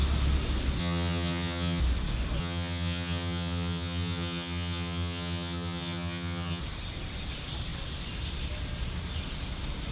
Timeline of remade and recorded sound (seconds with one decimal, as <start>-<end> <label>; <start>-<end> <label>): 0.0-0.8 recorded; 0.8-1.8 remade; 1.8-2.4 recorded; 2.4-6.6 remade; 6.6-9.9 recorded